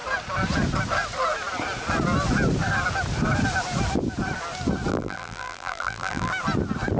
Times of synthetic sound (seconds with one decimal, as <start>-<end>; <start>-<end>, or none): 4.9-6.3